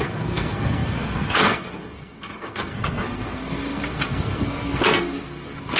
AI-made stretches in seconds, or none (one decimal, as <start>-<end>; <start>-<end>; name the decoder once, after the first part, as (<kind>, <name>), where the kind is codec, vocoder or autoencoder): 0.0-5.8 (codec, SNAC)